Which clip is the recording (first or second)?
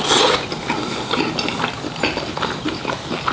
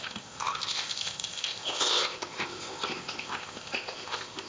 first